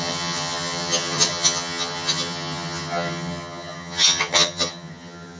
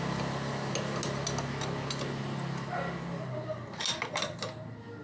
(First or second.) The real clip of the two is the second